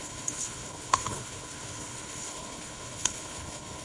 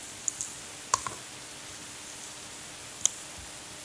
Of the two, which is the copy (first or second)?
first